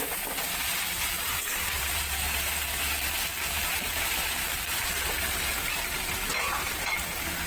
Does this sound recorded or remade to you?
remade